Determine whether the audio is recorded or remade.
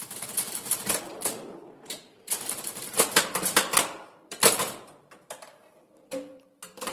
remade